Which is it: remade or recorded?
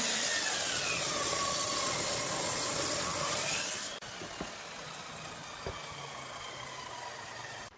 recorded